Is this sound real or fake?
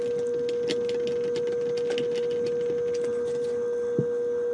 real